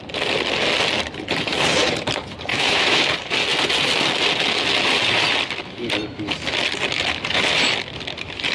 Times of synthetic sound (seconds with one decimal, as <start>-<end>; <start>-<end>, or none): 2.5-3.0